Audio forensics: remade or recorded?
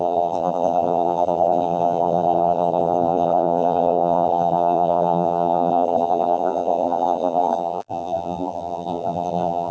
remade